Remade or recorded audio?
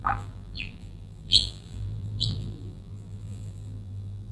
remade